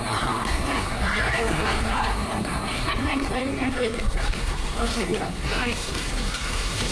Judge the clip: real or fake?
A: fake